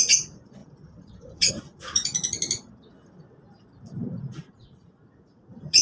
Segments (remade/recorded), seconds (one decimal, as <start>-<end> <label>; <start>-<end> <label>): 0.0-2.4 remade; 2.4-4.2 recorded; 4.2-5.8 remade